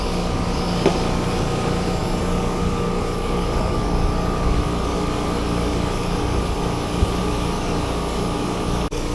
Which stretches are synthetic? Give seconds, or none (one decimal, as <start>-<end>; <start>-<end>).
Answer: 0.0-9.1